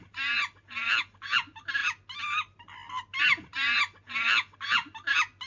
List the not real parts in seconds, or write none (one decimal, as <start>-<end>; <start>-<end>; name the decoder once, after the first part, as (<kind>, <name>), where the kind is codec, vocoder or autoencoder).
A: none